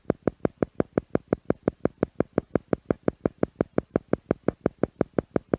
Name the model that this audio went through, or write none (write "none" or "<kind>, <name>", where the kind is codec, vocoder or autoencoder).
none